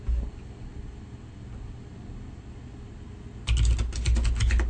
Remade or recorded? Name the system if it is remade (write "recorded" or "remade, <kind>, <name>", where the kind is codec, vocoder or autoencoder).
recorded